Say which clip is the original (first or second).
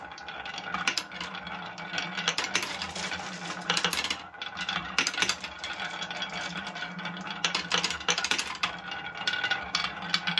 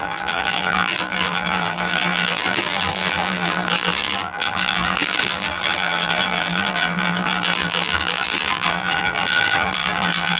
first